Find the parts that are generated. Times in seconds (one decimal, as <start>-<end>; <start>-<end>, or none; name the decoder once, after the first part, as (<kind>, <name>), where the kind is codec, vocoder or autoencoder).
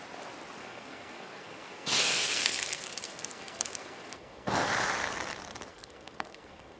0.6-4.7 (codec, SNAC); 5.7-6.8